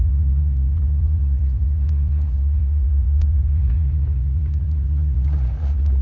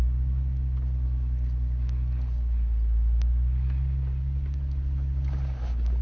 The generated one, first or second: first